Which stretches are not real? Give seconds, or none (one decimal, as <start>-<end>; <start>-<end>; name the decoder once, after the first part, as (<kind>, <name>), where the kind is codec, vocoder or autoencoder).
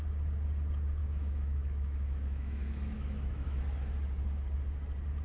1.0-3.6 (autoencoder, DAC-VAE)